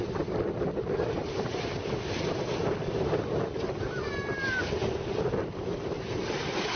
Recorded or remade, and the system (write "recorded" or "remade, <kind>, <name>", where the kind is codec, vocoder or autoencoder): recorded